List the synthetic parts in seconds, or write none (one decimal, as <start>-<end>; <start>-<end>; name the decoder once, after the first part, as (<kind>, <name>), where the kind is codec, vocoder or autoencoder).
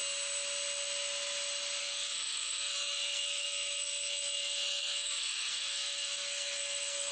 1.8-7.1 (codec, SNAC)